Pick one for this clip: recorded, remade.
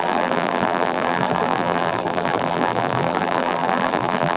remade